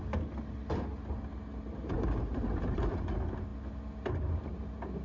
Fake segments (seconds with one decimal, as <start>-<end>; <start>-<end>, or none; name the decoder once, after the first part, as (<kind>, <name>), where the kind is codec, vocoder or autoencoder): none